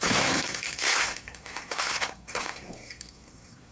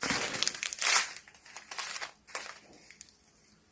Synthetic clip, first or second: first